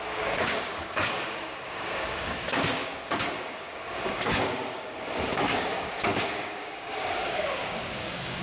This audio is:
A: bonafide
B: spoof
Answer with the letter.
B